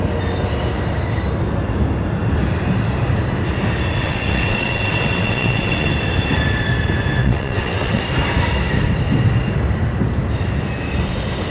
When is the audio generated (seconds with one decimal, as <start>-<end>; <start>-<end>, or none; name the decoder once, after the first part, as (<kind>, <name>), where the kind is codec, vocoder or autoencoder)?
4.0-5.9 (vocoder, WaveNeXt); 7.2-8.0